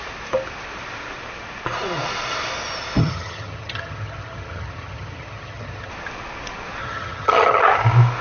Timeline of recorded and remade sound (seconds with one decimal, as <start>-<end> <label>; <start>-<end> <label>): 0.0-3.0 recorded; 3.0-5.9 remade; 5.9-6.8 recorded; 6.8-7.6 remade; 7.6-8.2 recorded